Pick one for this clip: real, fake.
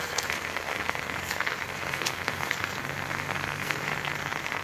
fake